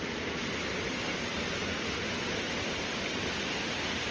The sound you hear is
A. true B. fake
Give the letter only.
A